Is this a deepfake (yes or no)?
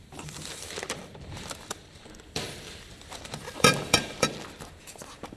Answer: yes